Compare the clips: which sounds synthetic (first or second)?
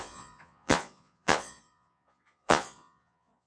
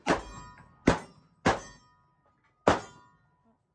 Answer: first